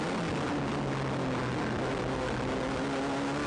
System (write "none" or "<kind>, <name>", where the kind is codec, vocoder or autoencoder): none